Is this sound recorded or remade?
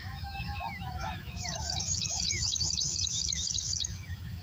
remade